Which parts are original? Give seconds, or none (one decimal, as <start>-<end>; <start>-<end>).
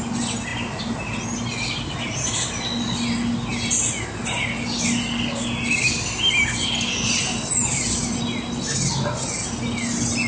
0.0-10.3